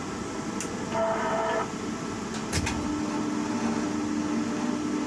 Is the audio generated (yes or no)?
no